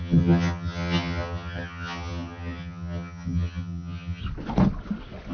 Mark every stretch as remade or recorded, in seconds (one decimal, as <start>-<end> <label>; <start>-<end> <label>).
0.0-4.2 remade; 4.2-5.3 recorded